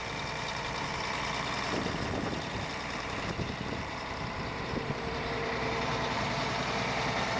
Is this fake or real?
fake